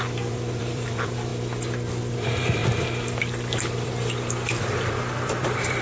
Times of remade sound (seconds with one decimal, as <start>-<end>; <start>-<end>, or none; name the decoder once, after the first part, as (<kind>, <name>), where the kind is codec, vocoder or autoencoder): 0.0-1.3 (vocoder, BigVGAN v2); 2.1-2.6; 4.6-5.8